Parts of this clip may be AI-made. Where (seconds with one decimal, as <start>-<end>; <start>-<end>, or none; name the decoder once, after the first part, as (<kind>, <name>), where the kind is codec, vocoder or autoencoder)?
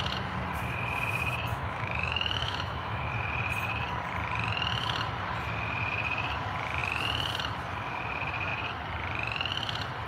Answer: 1.5-3.0 (autoencoder, DAC-VAE)